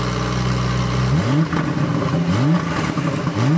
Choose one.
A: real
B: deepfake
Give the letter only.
A